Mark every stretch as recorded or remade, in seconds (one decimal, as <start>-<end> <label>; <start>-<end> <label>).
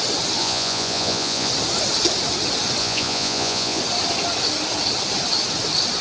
0.0-0.4 recorded; 0.4-1.5 remade; 1.5-2.8 recorded; 2.8-3.8 remade; 3.8-6.0 recorded